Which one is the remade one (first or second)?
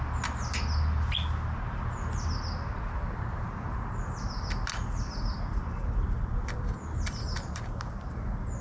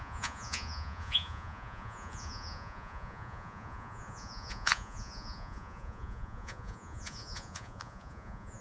second